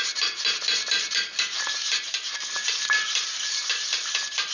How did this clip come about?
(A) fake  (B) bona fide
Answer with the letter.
A